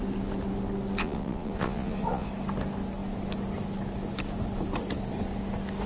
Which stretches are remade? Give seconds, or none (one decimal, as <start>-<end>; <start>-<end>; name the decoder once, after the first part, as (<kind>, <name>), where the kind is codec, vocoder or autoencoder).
1.0-2.3 (vocoder, Vocos)